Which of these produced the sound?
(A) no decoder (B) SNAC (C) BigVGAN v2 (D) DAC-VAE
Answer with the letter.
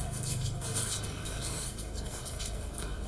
B